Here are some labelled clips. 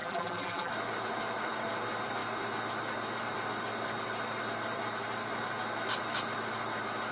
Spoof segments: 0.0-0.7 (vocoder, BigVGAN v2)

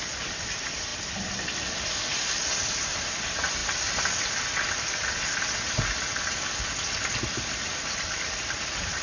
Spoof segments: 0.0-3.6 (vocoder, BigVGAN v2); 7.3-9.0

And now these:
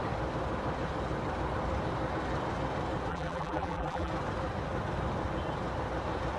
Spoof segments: 3.1-4.1 (vocoder, BigVGAN v2)